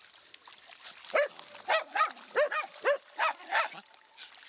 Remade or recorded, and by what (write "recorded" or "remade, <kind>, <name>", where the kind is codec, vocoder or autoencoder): recorded